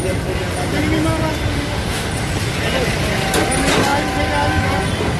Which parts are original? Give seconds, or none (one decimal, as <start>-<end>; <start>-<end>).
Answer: 0.0-1.5; 2.1-5.2